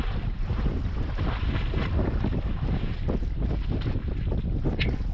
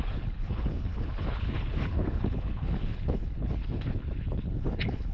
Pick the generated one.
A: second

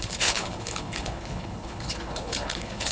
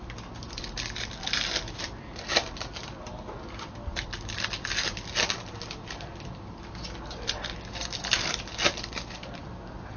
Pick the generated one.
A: first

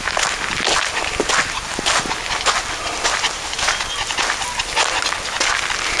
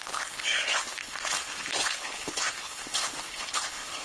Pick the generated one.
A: second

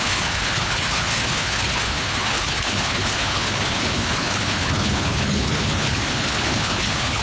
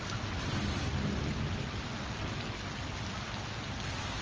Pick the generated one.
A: first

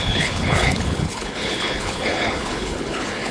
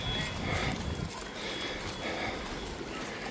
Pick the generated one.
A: first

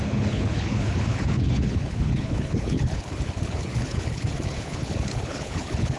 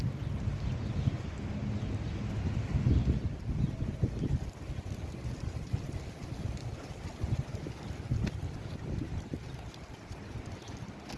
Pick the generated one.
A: first